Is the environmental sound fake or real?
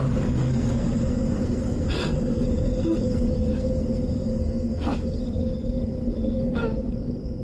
fake